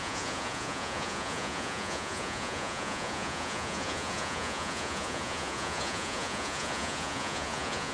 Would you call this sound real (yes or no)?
no